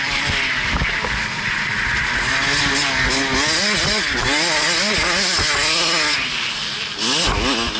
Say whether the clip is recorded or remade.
recorded